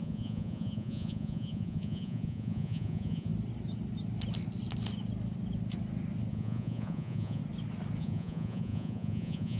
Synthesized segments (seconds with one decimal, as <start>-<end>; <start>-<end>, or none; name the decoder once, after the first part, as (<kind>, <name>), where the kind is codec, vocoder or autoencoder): 0.0-3.3 (vocoder, Vocos); 6.3-7.4; 8.0-9.6